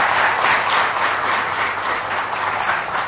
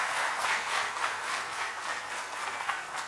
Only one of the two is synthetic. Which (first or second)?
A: second